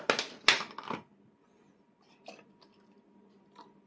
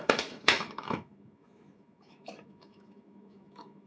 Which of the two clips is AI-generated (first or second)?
second